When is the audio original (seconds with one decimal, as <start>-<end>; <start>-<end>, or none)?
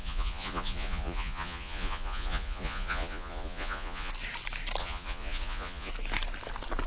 4.1-4.8; 5.9-6.9